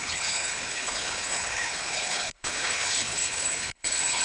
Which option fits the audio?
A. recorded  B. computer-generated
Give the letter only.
B